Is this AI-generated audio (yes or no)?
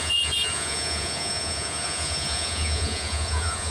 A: yes